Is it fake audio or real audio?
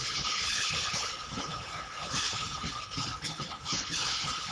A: fake